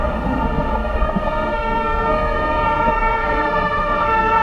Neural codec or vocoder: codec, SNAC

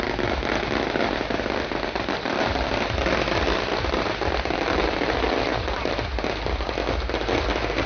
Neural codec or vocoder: none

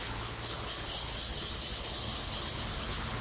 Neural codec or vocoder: codec, HILCodec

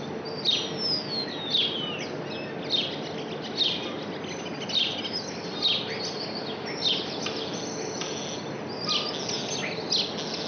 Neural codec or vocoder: none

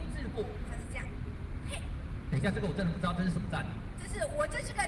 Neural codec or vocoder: none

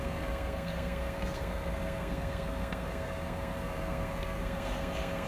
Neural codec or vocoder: codec, SNAC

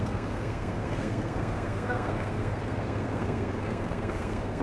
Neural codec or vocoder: codec, SNAC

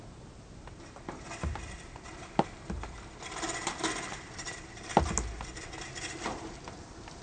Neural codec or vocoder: none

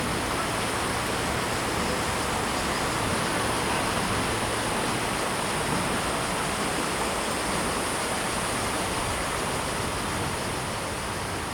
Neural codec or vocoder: none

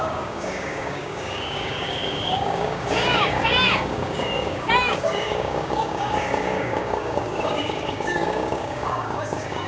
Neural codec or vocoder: codec, DAC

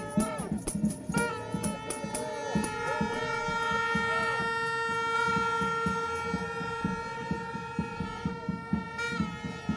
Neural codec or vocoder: none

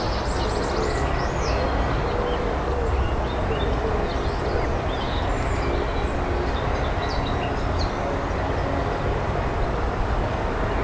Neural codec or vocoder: none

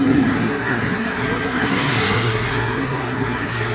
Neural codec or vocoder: codec, SNAC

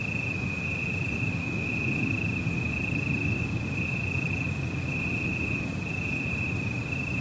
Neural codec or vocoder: none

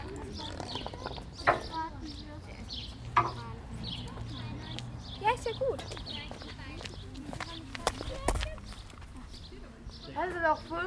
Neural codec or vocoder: none